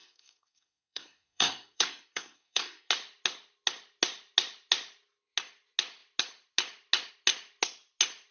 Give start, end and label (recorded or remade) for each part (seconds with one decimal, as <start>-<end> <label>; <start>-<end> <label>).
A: 0.0-2.9 remade; 2.9-8.3 recorded